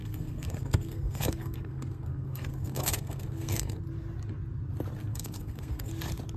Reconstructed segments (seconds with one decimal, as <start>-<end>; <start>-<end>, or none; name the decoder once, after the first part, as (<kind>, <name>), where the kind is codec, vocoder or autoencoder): 0.0-3.8 (codec, SNAC); 5.1-5.9